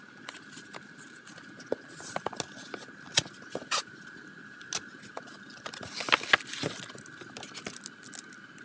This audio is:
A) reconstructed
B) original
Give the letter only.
B